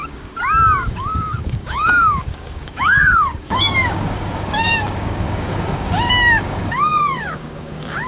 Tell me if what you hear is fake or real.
fake